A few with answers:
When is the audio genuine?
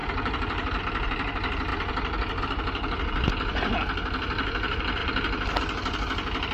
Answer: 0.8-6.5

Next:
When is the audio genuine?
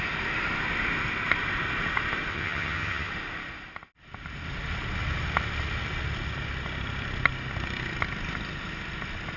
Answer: 0.0-2.3; 3.1-9.4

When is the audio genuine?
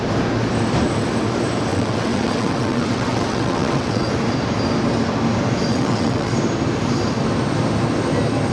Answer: 0.0-1.7; 4.1-5.7; 6.3-8.5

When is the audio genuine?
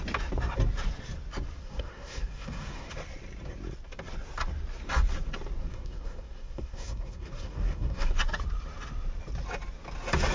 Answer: 0.0-1.6; 2.9-5.6; 8.1-10.3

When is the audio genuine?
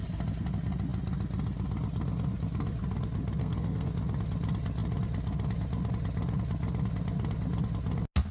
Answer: 0.0-3.4; 3.9-8.3